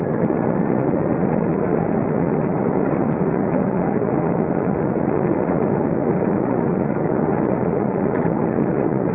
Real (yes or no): no